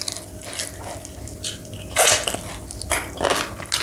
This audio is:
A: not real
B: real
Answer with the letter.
B